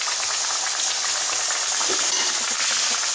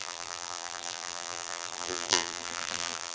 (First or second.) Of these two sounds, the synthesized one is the second